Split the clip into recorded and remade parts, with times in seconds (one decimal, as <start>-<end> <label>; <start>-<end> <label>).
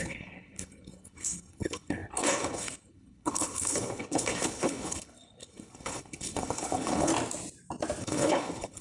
0.0-7.1 remade; 7.1-8.0 recorded; 8.0-8.8 remade